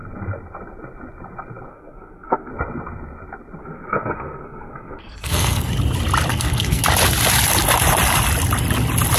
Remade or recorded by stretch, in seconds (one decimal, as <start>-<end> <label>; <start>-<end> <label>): 0.0-1.7 recorded; 1.7-2.5 remade; 2.5-3.6 recorded; 3.6-5.7 remade; 5.7-6.3 recorded; 6.3-6.8 remade; 6.8-9.2 recorded